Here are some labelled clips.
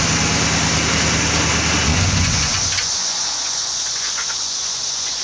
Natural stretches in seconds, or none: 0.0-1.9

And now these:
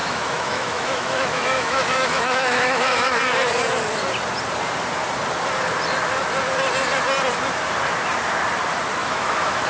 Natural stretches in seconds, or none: 3.2-9.0

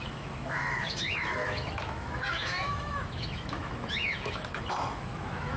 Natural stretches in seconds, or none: none

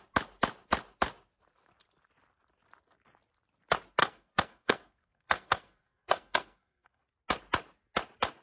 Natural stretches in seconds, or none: 0.0-4.0; 7.0-8.4

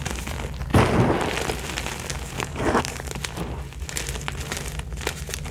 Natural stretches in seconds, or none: 0.0-2.1; 3.1-5.5

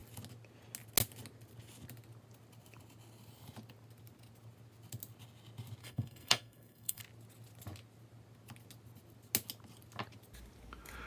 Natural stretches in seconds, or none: 0.0-5.8; 7.0-11.1